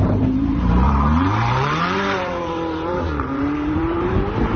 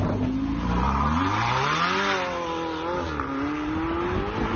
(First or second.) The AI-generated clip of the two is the first